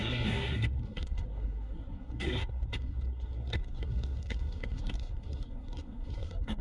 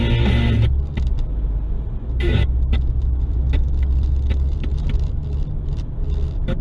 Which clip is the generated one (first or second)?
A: first